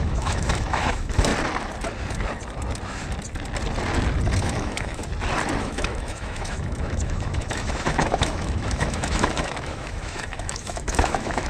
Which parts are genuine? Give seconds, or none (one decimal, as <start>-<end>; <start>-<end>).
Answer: 1.3-4.4; 5.0-5.6